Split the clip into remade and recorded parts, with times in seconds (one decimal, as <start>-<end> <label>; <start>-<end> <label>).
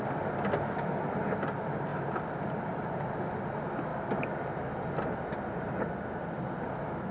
0.0-7.1 recorded